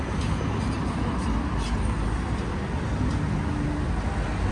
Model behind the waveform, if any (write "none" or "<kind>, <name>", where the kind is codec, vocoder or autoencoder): none